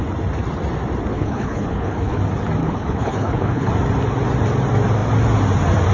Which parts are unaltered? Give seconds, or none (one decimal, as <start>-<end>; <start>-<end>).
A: 0.0-1.1; 2.2-2.6; 3.7-5.9